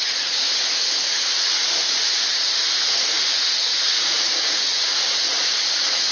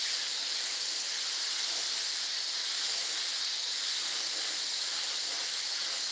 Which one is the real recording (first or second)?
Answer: second